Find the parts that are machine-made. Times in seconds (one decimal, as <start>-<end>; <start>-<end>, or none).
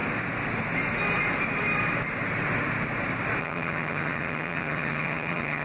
3.4-5.6